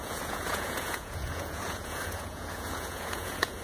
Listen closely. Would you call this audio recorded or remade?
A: remade